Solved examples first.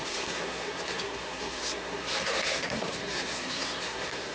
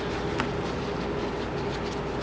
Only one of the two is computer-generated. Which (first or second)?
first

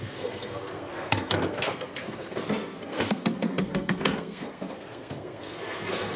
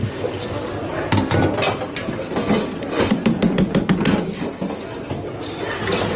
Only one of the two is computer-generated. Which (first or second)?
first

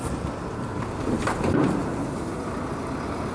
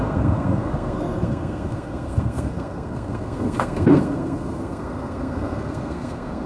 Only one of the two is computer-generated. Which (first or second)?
second